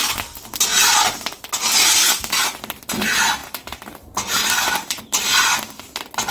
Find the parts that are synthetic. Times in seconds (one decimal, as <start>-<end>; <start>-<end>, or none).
0.7-1.4; 3.4-5.0